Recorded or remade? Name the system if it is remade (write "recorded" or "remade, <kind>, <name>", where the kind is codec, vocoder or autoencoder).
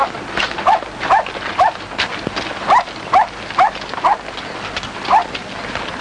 recorded